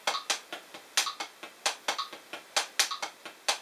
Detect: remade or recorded recorded